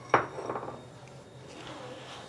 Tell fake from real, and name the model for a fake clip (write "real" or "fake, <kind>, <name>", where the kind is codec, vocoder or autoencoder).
real